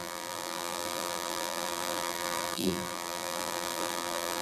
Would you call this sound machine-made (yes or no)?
yes